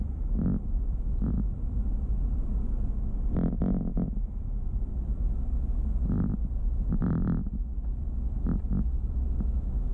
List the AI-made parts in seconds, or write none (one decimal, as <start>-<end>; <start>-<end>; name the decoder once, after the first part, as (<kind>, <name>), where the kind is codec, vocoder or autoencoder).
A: 0.0-2.4 (vocoder, BigVGAN v2); 4.4-5.2; 6.4-9.9